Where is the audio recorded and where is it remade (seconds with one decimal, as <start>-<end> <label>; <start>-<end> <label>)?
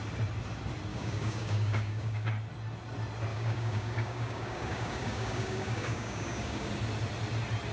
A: 0.0-0.9 recorded; 0.9-2.3 remade; 2.3-3.3 recorded; 3.3-6.7 remade; 6.7-7.7 recorded